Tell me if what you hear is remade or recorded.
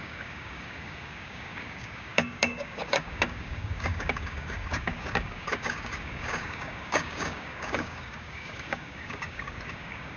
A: remade